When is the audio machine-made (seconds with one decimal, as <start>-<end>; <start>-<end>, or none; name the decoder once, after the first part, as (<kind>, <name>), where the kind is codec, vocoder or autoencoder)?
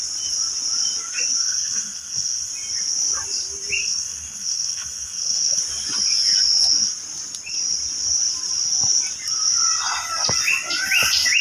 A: 1.4-2.5 (codec, SNAC); 3.8-5.6